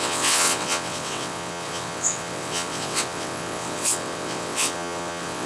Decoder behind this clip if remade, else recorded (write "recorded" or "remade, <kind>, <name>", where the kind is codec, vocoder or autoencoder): remade, vocoder, WaveNeXt